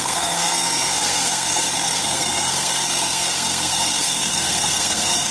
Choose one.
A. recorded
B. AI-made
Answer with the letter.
B